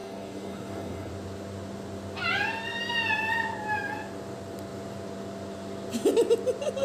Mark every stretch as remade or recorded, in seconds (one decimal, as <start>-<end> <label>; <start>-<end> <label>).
0.0-1.1 remade; 1.1-6.8 recorded